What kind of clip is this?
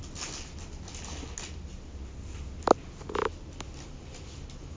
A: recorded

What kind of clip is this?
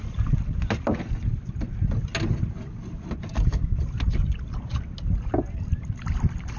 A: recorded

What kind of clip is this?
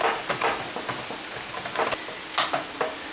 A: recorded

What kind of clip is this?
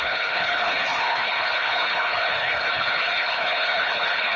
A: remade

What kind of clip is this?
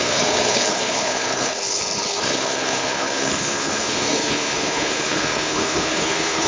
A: remade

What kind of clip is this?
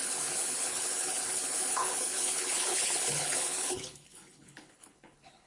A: remade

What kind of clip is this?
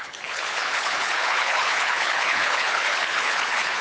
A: remade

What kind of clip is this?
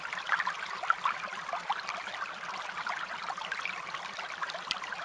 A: recorded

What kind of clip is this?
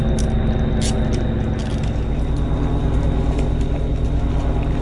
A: recorded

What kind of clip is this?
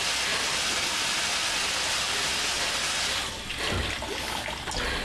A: recorded